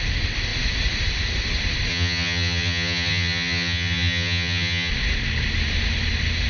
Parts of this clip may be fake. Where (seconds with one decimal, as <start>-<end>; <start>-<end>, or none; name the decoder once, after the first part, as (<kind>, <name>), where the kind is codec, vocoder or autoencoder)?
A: 1.9-4.9 (vocoder, HiFi-GAN)